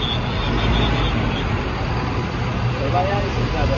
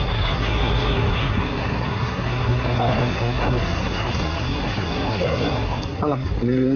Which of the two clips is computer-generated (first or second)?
second